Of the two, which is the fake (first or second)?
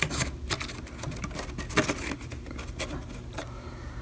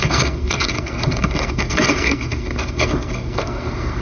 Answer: second